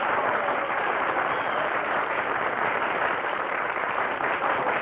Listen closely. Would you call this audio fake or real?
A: fake